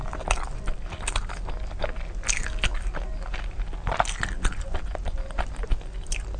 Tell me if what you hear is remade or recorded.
recorded